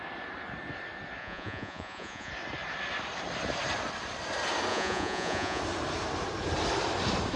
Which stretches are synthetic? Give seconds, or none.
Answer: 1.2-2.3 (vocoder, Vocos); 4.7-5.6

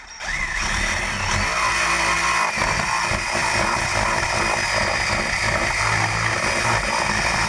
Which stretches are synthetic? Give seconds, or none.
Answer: none